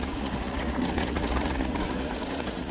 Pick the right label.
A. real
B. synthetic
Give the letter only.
B